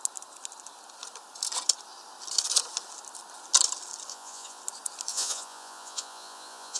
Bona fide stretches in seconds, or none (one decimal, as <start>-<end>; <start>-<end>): 0.0-4.1; 4.6-5.1